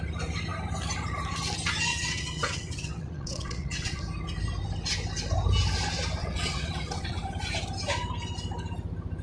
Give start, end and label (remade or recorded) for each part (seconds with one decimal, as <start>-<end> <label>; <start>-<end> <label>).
0.0-1.9 recorded; 1.9-4.0 remade; 4.0-6.2 recorded; 6.2-7.3 remade; 7.3-9.2 recorded